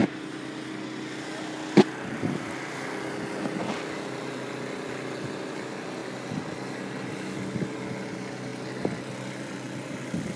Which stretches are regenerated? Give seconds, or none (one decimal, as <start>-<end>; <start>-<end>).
none